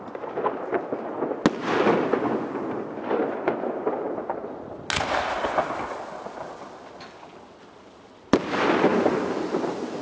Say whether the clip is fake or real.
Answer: real